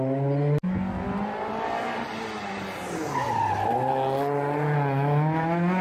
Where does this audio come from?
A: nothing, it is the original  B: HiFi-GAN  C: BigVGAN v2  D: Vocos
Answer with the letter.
A